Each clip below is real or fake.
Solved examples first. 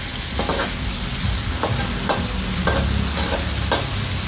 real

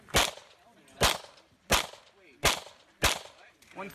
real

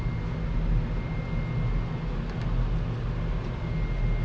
real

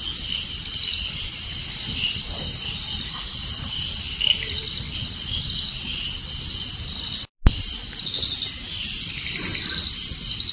real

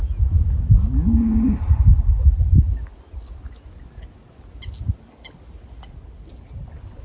real